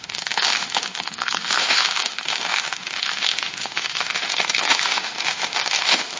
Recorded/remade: remade